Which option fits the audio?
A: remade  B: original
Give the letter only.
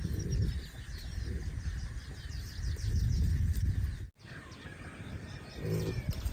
B